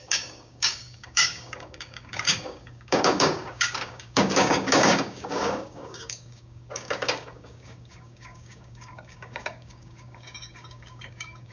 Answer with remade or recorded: remade